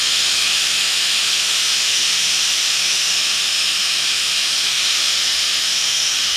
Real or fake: fake